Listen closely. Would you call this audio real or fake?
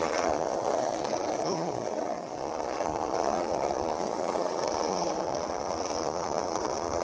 fake